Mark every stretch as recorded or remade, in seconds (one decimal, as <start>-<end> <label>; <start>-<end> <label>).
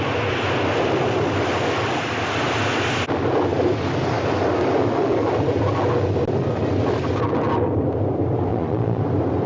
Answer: 0.0-8.5 recorded; 8.5-9.0 remade; 9.0-9.5 recorded